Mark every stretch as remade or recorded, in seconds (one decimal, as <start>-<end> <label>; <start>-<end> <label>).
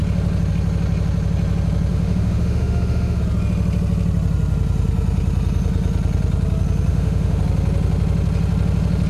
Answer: 0.0-1.9 recorded; 1.9-3.2 remade; 3.2-6.9 recorded; 6.9-7.4 remade; 7.4-9.1 recorded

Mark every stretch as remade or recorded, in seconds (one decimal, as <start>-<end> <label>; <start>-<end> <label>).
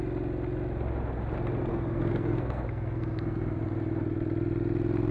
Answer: 0.0-1.7 recorded; 1.7-3.6 remade; 3.6-5.1 recorded